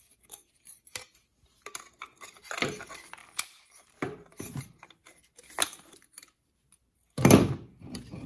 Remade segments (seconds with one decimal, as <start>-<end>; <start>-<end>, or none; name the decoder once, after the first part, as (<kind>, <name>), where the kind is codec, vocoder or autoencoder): none